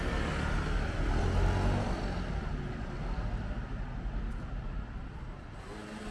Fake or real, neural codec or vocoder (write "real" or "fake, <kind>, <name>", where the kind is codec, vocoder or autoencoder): real